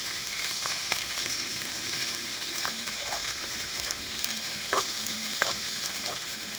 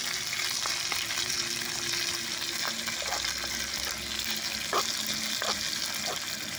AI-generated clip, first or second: first